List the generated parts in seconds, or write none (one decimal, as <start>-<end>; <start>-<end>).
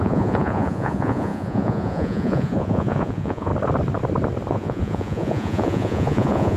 0.0-3.5; 4.5-6.6